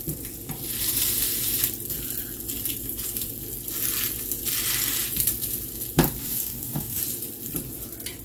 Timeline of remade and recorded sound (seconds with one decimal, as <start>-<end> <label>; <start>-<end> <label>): 0.0-6.2 recorded; 6.2-7.0 remade; 7.0-8.2 recorded